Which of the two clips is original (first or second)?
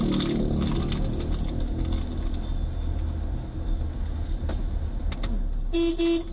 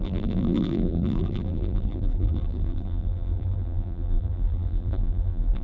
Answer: first